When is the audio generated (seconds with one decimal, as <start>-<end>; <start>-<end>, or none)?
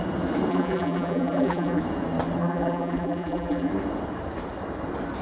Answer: 0.5-1.8; 2.4-3.7